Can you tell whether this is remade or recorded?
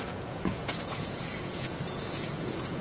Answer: remade